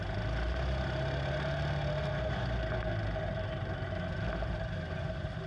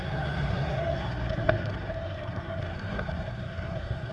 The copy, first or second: second